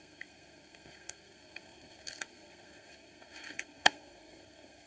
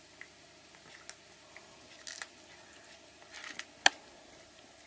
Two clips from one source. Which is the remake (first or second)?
first